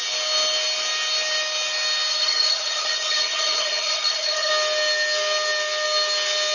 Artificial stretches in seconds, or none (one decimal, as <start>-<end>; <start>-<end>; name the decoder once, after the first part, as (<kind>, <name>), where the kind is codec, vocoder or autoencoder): 2.1-4.5 (vocoder, HiFi-GAN)